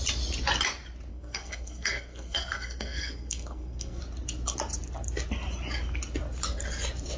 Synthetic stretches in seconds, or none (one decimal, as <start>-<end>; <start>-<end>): 1.1-4.0